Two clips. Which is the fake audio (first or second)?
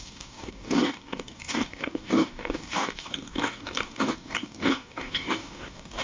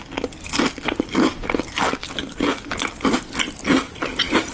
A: first